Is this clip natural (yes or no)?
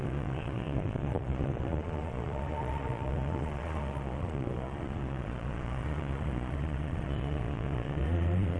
no